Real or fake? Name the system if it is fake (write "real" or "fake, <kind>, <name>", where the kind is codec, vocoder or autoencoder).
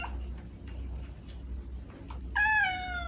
real